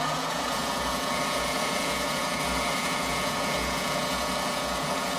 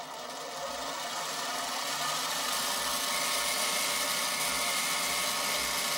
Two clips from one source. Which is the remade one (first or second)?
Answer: first